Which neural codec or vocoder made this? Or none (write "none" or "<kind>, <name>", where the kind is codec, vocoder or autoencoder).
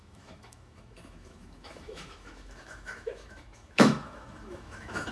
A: autoencoder, DAC-VAE